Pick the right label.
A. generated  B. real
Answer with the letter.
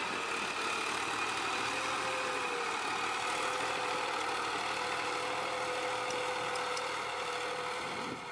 B